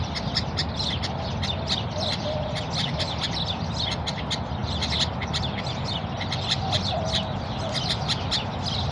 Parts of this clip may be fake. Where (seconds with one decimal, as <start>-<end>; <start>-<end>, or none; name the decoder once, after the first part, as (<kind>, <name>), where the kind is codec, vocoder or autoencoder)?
none